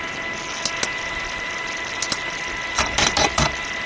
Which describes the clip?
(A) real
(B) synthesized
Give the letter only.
A